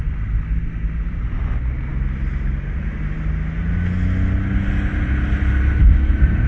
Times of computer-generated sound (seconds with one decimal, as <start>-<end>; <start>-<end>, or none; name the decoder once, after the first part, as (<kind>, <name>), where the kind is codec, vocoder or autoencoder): none